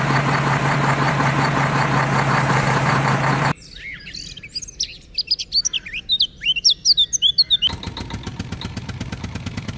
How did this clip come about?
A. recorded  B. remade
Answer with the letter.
A